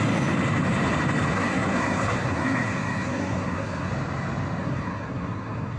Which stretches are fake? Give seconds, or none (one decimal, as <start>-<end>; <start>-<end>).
1.3-3.9; 4.6-5.8